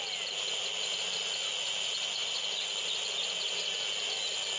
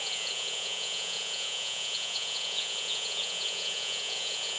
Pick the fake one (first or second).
second